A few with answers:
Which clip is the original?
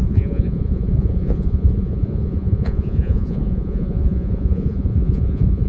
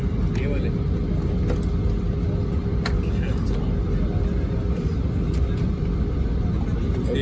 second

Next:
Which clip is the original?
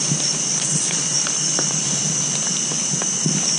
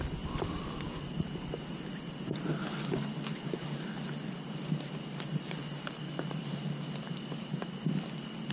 second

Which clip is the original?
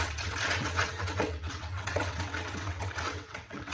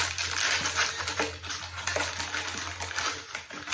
second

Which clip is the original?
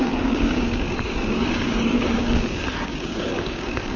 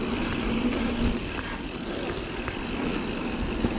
second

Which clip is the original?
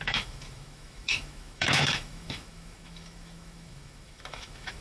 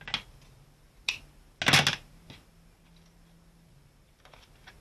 second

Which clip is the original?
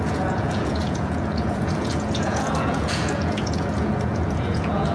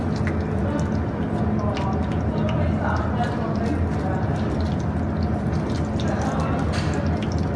second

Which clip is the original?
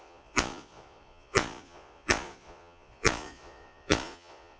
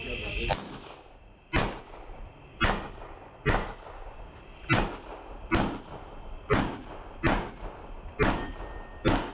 second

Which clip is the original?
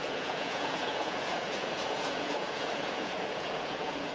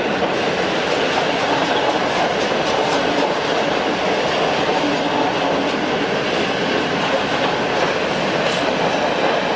second